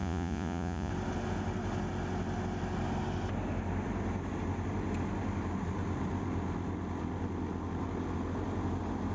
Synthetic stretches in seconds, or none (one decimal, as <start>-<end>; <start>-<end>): 0.0-0.9